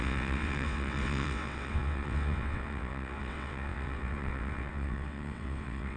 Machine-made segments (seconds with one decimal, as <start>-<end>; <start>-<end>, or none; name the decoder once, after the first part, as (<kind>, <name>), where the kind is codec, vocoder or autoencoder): 0.0-6.0 (vocoder, WaveNeXt)